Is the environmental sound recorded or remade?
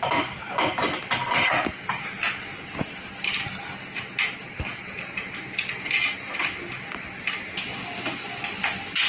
recorded